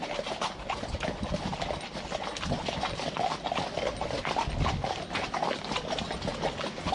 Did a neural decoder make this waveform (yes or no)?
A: no